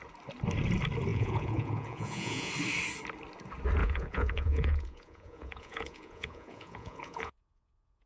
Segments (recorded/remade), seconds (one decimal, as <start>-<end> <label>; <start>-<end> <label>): 0.0-1.1 recorded; 1.1-2.5 remade; 2.5-3.8 recorded; 3.8-8.1 remade